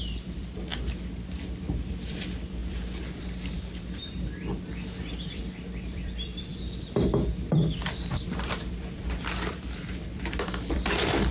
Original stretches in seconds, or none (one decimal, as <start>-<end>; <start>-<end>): 0.7-1.6

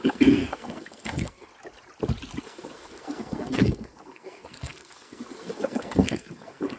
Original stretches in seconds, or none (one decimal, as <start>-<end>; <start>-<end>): 1.5-2.4

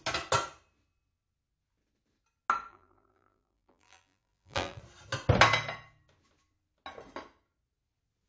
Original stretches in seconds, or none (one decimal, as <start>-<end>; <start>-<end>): 0.0-2.7; 4.8-8.3

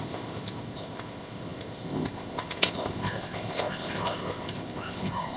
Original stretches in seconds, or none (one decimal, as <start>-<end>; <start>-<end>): none